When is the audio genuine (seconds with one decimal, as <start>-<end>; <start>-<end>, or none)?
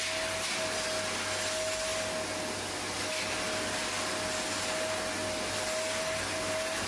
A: 0.0-6.9